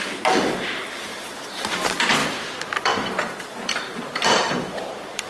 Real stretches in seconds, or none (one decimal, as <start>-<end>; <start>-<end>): 0.0-1.1; 1.8-2.2